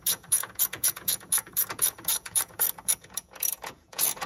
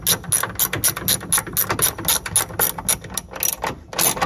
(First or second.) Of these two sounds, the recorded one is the second